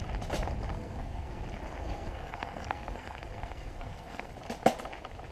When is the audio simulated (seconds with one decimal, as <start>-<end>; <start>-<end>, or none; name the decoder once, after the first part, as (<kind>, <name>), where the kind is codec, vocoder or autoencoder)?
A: 0.7-1.4 (codec, SNAC); 1.8-4.3